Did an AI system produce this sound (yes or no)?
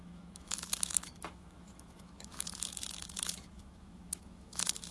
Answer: yes